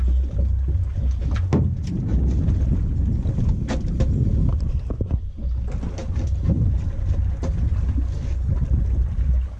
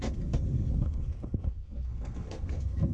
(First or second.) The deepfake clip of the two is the second